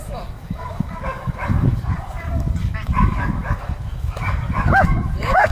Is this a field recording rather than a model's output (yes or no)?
no